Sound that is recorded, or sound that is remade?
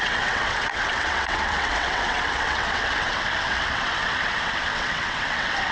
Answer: remade